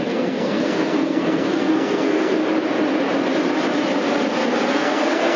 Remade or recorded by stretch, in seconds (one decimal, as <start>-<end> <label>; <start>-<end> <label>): 0.0-2.4 remade; 2.4-4.7 recorded; 4.7-5.4 remade